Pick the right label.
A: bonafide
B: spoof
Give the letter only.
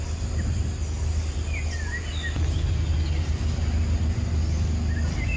A